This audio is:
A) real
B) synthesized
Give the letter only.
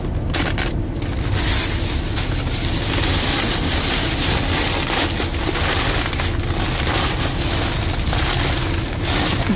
A